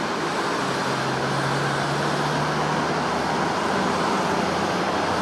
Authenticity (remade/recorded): recorded